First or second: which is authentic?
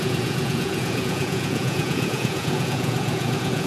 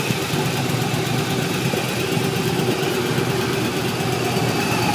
second